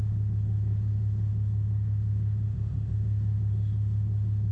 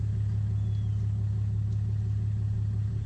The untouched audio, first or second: second